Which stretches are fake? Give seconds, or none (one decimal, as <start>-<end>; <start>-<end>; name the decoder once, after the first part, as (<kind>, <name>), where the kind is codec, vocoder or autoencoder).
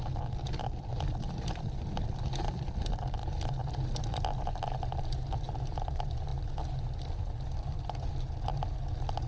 0.9-1.8 (vocoder, BigVGAN v2); 6.3-8.1